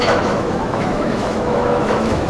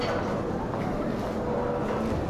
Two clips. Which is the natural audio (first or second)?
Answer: second